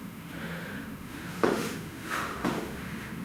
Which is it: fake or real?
fake